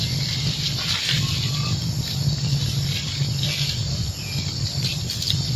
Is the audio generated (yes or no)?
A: no